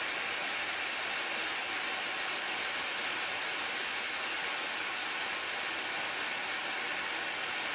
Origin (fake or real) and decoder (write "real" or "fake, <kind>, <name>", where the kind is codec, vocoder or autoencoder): real